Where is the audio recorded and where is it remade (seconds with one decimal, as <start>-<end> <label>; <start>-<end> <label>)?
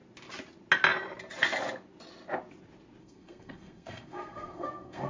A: 0.0-3.0 recorded; 3.0-5.1 remade